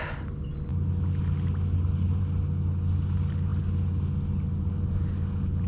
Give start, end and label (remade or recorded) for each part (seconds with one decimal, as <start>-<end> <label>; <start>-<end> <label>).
0.0-5.7 recorded